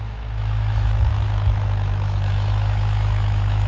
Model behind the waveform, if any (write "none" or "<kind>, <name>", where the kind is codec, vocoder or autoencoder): autoencoder, DAC-VAE